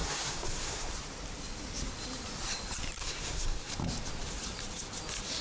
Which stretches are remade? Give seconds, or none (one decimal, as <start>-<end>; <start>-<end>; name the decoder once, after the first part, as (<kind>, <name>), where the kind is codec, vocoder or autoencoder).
0.0-0.9 (codec, SNAC); 3.0-3.7